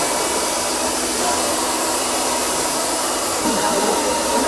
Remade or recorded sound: remade